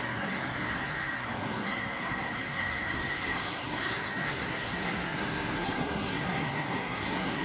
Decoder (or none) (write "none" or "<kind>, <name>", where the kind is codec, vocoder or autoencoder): codec, SNAC